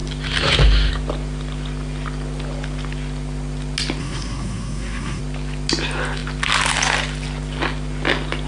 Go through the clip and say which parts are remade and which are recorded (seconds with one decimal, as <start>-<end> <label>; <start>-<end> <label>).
0.0-4.0 recorded; 4.0-5.2 remade; 5.2-8.5 recorded